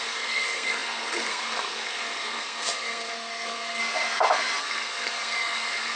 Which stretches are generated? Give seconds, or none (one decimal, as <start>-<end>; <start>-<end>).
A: 0.0-3.8; 4.6-6.0